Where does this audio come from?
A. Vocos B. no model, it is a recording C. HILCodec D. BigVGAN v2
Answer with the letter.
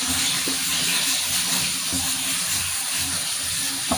B